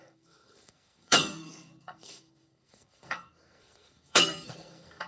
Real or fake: fake